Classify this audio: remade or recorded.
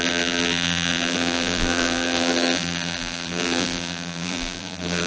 remade